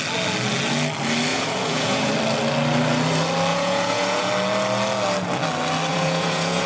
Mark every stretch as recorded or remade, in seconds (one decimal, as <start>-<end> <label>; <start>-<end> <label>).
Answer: 0.0-1.3 recorded; 1.3-2.1 remade; 2.1-3.5 recorded; 3.5-4.3 remade; 4.3-5.9 recorded; 5.9-6.7 remade